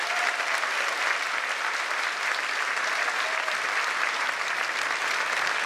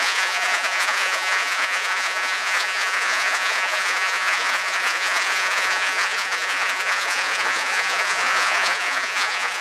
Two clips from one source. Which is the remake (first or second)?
second